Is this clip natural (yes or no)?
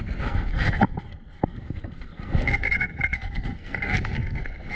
no